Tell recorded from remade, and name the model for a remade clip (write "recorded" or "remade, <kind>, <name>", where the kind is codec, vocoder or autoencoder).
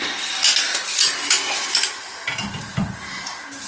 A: recorded